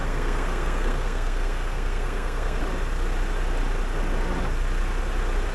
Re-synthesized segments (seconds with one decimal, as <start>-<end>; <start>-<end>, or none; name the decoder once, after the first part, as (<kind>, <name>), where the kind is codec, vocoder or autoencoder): 0.0-2.6 (codec, SNAC)